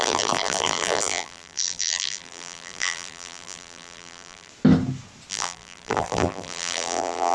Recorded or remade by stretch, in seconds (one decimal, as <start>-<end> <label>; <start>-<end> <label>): 0.0-4.5 remade; 4.5-5.3 recorded; 5.3-7.3 remade